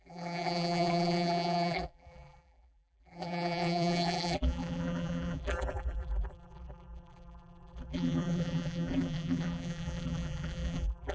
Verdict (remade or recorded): remade